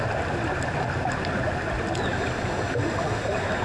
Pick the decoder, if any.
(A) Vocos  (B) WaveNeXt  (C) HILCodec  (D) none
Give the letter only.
D